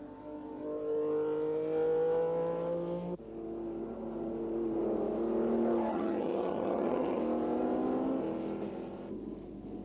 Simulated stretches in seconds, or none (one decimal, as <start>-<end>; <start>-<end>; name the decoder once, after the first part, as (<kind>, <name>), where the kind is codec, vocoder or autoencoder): 5.9-7.2 (vocoder, HiFi-GAN)